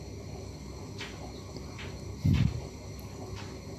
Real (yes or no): yes